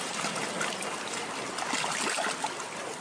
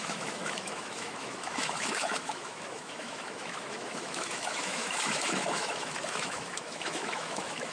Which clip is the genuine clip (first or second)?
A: first